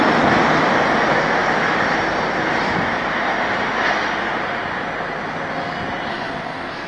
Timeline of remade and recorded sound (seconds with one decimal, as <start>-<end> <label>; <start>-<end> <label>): 0.0-6.1 recorded; 6.1-6.9 remade